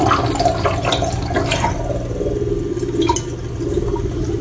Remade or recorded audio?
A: recorded